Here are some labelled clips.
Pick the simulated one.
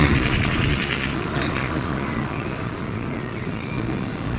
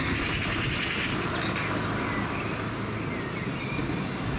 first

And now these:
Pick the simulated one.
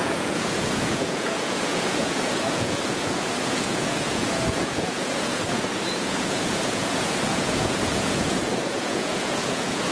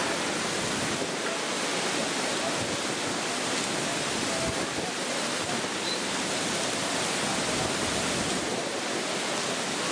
first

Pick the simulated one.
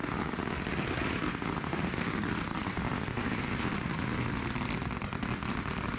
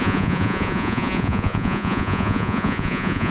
second